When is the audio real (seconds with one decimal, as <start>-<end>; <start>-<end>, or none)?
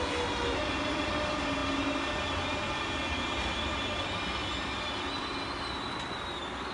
0.0-6.7